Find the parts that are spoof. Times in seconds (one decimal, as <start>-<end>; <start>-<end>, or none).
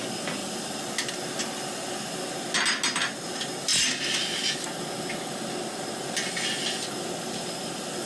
none